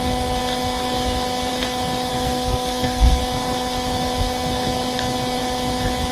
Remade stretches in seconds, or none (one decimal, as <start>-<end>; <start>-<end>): 2.1-3.2